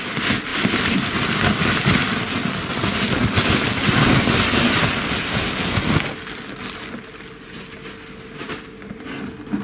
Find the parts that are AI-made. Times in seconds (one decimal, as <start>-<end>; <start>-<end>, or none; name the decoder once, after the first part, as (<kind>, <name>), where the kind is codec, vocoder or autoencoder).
none

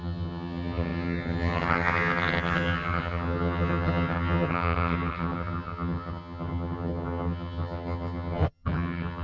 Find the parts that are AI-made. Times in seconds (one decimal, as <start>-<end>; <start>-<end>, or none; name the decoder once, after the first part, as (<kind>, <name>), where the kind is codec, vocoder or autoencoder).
0.0-9.2 (vocoder, HiFi-GAN)

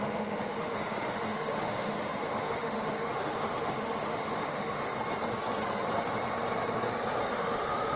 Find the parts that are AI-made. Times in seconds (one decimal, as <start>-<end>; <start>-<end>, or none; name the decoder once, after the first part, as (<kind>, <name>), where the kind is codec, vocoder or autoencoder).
0.0-4.9 (autoencoder, DAC-VAE); 7.2-8.0

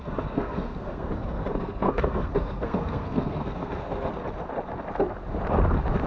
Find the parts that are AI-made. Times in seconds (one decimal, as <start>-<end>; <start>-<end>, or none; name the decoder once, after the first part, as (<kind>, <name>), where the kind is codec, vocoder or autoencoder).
0.0-4.1 (codec, SNAC)

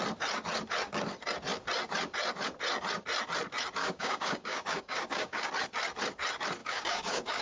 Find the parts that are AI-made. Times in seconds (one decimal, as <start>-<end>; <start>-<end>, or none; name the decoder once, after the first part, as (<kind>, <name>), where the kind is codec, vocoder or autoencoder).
3.8-5.5 (codec, DAC); 6.6-7.4

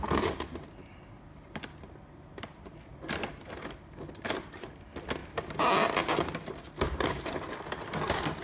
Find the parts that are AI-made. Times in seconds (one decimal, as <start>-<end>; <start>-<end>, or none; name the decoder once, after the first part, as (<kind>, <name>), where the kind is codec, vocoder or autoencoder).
none

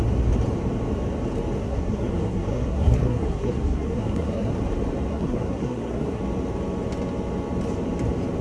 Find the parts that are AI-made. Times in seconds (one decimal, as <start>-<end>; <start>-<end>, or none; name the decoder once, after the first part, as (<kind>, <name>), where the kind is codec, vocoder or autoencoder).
1.6-4.5 (codec, SNAC); 5.1-6.2